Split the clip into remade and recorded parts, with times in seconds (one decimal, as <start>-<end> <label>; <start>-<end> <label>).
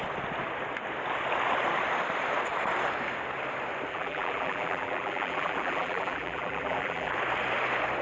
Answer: 0.0-3.9 recorded; 3.9-7.1 remade; 7.1-8.0 recorded